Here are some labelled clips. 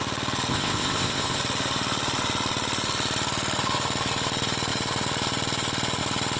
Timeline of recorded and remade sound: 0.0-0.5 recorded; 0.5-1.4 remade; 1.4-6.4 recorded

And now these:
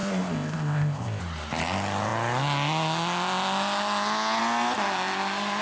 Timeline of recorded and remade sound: 0.0-1.2 remade; 1.2-5.6 recorded

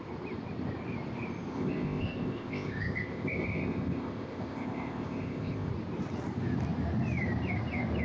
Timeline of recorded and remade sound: 0.0-1.5 recorded; 1.5-5.7 remade; 5.7-8.0 recorded

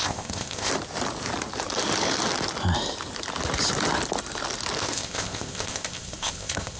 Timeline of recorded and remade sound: 0.0-0.7 remade; 0.7-4.8 recorded; 4.8-6.8 remade

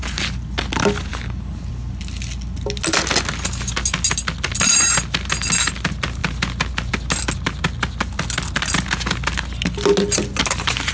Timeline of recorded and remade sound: 0.0-10.9 recorded

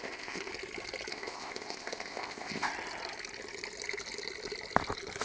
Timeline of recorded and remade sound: 0.0-0.5 remade; 0.5-1.1 recorded; 1.1-2.7 remade; 2.7-5.2 recorded